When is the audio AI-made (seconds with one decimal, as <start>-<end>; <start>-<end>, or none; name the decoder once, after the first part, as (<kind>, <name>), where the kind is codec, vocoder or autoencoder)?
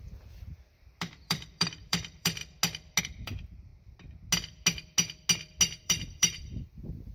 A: 0.0-2.4 (vocoder, BigVGAN v2); 3.0-3.7; 5.8-7.1